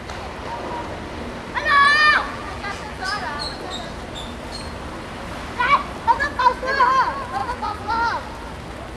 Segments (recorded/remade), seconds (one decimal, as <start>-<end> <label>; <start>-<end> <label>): 0.0-2.1 recorded; 2.1-3.3 remade; 3.3-7.4 recorded; 7.4-7.9 remade; 7.9-9.0 recorded